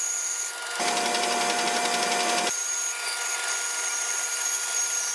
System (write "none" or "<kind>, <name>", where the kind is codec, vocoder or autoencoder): none